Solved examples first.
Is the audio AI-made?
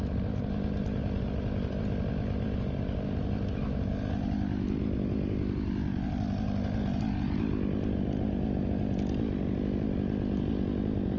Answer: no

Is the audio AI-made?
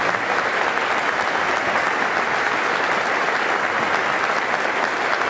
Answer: no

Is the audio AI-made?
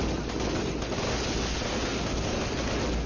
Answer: no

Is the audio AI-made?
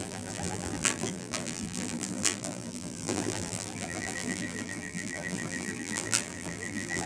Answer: yes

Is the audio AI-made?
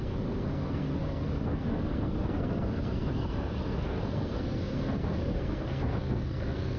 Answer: yes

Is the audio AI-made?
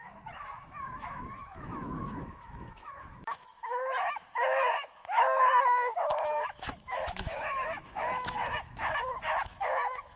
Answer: yes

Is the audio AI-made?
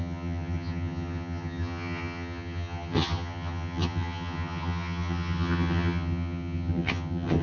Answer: yes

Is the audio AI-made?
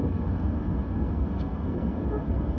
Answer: yes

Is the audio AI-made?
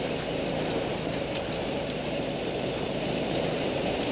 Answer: yes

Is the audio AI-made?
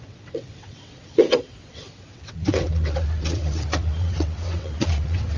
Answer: yes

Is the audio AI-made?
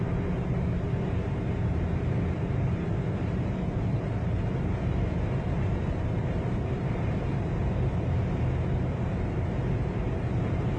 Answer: yes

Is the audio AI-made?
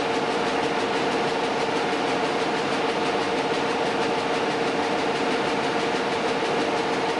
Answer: no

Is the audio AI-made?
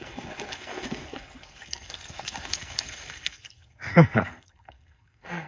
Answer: yes